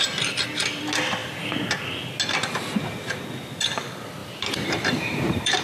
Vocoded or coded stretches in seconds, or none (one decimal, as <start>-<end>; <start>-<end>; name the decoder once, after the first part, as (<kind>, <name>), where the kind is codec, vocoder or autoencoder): 4.2-5.6 (vocoder, BigVGAN v2)